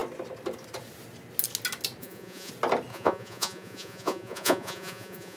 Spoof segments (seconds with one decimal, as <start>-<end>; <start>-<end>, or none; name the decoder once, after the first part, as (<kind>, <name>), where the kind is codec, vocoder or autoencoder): 2.0-2.5 (vocoder, Vocos); 2.9-5.4